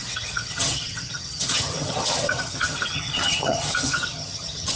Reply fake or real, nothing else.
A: fake